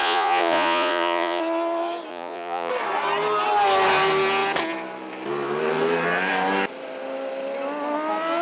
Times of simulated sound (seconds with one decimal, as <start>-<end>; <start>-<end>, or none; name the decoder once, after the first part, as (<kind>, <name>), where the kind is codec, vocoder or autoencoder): 0.0-1.4 (vocoder, Vocos); 2.1-2.7